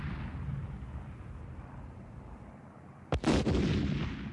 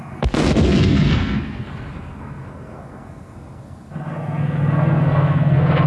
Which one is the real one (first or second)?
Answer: first